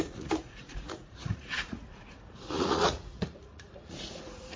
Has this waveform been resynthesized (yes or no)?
yes